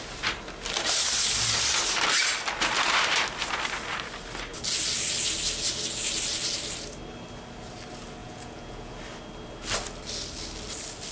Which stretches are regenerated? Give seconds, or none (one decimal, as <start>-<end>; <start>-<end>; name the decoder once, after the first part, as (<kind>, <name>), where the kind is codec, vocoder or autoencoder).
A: 8.2-8.9 (vocoder, Vocos)